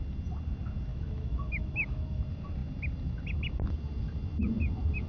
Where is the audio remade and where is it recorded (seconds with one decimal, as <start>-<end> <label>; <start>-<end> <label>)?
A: 0.0-0.9 recorded; 0.9-2.2 remade; 2.2-5.1 recorded